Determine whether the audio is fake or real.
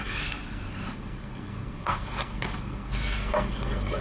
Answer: fake